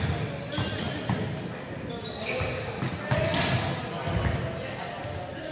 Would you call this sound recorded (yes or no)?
yes